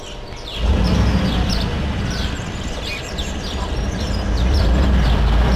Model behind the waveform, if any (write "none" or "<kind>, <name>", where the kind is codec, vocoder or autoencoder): none